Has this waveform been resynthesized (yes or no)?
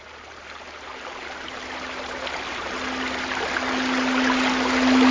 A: no